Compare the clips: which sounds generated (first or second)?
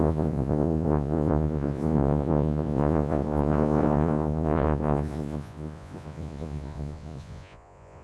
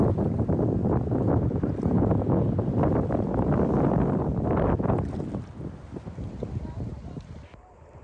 first